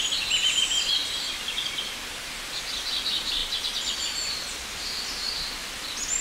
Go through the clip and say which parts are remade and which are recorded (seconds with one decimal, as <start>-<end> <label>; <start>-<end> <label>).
0.0-6.2 recorded